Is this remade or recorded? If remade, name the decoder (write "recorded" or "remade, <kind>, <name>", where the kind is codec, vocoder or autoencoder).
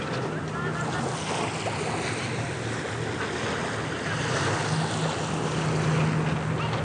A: recorded